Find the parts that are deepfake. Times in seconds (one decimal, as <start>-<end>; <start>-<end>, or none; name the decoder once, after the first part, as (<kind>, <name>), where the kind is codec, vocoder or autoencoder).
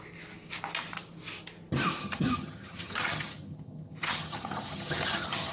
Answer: 2.0-5.5 (vocoder, HiFi-GAN)